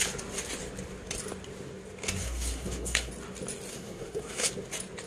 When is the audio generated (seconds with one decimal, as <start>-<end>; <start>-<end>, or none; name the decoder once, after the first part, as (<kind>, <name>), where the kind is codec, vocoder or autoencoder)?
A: 2.2-3.1 (codec, SNAC); 3.7-4.5